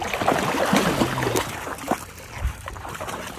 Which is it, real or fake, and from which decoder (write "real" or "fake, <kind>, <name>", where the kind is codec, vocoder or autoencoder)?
real